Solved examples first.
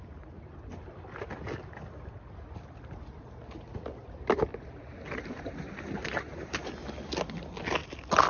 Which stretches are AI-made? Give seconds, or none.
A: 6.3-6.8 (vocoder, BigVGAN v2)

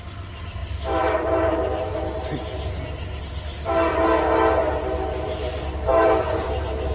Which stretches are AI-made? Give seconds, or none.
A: 5.9-6.9 (vocoder, BigVGAN v2)

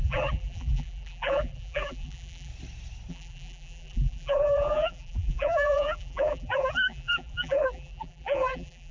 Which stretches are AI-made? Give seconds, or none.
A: 0.0-2.5 (vocoder, BigVGAN v2); 3.1-8.9